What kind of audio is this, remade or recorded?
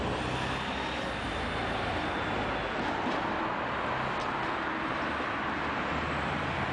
recorded